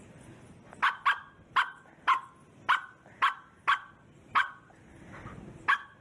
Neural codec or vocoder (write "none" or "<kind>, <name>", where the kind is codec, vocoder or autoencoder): none